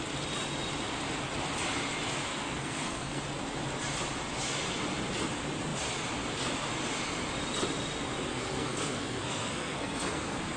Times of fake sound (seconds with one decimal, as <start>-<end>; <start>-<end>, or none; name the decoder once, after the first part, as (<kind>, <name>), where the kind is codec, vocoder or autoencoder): 2.3-3.2 (codec, SNAC); 8.3-10.6